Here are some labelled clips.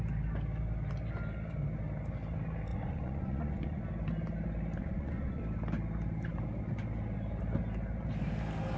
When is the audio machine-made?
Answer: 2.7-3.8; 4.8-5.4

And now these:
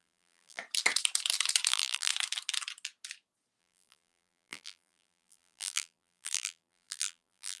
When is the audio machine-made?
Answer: 0.0-0.6; 1.7-2.1; 3.6-7.6

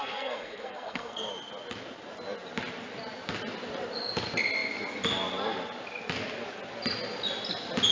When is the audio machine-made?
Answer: 0.0-1.3

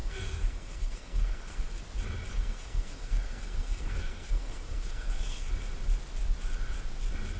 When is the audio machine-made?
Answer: 0.0-1.8; 2.3-5.5

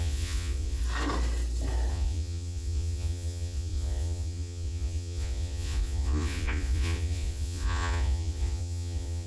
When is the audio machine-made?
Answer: 0.0-0.8; 1.9-9.3

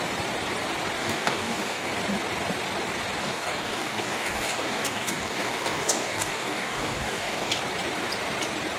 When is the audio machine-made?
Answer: 1.0-1.9; 3.2-7.6